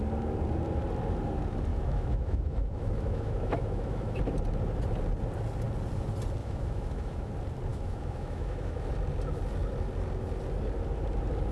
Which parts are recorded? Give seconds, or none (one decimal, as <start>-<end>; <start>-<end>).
0.0-1.7; 4.2-6.4; 7.3-7.7; 8.9-11.5